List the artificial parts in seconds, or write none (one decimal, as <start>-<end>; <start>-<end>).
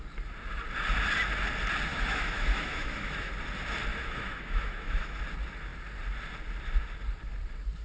1.9-3.3; 3.9-5.2